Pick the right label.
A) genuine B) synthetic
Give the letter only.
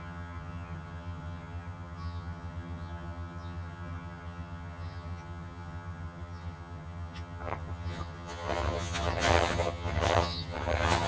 B